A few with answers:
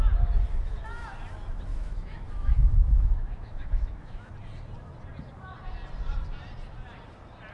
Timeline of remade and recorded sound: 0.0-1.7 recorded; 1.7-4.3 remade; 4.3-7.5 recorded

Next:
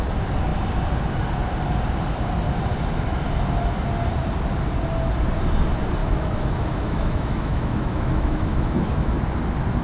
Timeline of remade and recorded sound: 0.0-6.0 recorded; 6.0-9.2 remade; 9.2-9.8 recorded

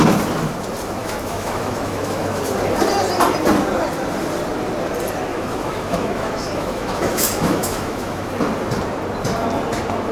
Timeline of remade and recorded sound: 0.0-1.0 recorded; 1.0-2.4 remade; 2.4-5.3 recorded; 5.3-8.3 remade; 8.3-10.1 recorded

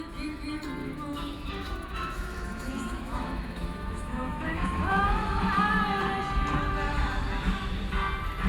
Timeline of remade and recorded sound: 0.0-0.8 recorded; 0.8-5.4 remade; 5.4-8.5 recorded